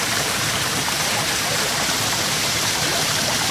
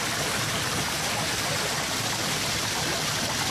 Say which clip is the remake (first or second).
first